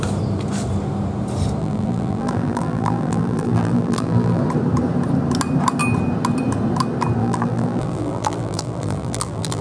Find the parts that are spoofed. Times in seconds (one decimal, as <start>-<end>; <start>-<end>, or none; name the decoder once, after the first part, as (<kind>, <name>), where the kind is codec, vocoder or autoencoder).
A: 1.6-4.4 (vocoder, BigVGAN v2); 7.2-9.6